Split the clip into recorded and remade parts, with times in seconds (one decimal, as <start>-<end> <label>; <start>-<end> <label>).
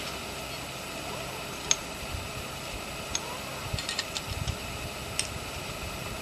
0.0-6.2 recorded